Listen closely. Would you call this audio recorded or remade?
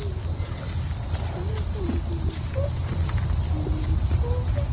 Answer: recorded